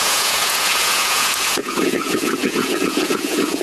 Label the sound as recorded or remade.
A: remade